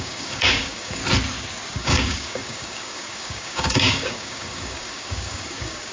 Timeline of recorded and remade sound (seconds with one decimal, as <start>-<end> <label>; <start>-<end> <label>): 0.0-1.0 remade; 1.0-1.7 recorded; 1.7-5.9 remade